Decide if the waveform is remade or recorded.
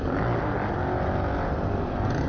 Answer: recorded